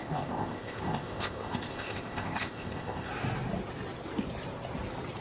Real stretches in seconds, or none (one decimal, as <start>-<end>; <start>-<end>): 3.1-5.2